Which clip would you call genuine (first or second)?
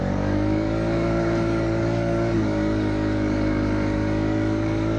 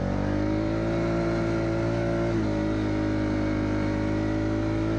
second